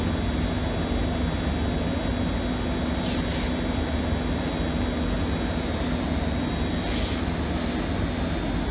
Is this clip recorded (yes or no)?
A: yes